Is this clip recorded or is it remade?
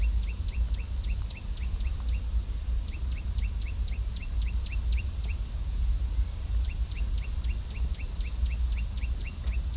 recorded